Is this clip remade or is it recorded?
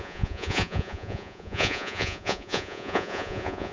remade